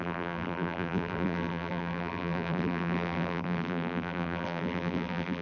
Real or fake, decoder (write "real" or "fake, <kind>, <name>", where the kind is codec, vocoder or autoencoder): fake, vocoder, BigVGAN v2